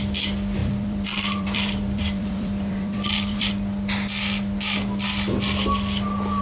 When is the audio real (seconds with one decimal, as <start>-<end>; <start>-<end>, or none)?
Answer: 0.0-0.6; 3.5-6.4